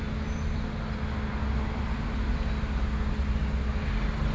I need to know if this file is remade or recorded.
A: recorded